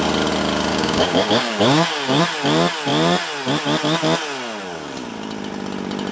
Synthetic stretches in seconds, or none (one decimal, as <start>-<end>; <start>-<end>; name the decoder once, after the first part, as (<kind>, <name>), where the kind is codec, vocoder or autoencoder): 0.7-2.2 (codec, DAC)